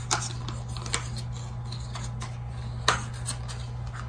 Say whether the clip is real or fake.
real